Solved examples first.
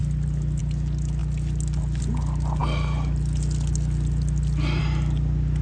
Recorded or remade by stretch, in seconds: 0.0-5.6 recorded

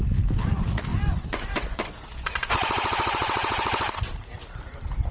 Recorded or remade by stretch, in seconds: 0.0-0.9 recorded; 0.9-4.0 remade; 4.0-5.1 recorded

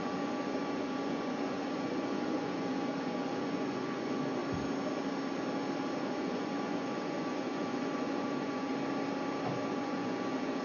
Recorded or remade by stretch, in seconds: 0.0-4.4 remade; 4.4-6.0 recorded; 6.0-8.7 remade; 8.7-9.7 recorded; 9.7-10.6 remade

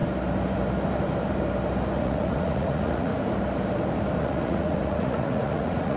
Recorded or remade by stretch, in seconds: 0.0-2.0 recorded; 2.0-3.1 remade; 3.1-4.2 recorded; 4.2-6.0 remade

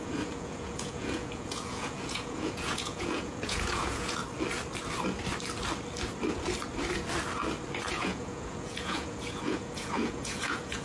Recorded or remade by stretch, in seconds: 0.0-4.2 remade; 4.2-7.9 recorded; 7.9-10.8 remade

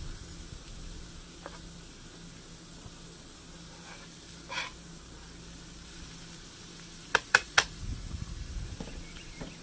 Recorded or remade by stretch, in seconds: 0.0-7.1 recorded; 7.1-8.5 remade; 8.5-9.6 recorded